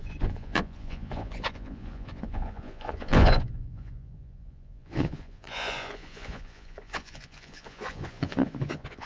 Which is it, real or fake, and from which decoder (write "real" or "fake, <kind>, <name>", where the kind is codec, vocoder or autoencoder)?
fake, vocoder, Vocos